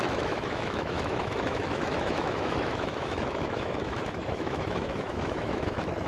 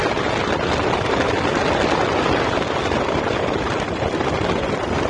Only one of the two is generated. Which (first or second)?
first